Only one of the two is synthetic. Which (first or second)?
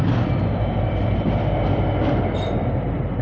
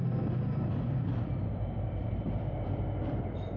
second